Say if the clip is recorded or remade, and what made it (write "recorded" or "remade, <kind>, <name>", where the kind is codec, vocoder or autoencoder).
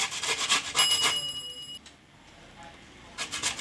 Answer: recorded